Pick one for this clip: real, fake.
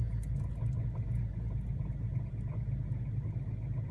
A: real